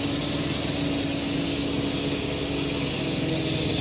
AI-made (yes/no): no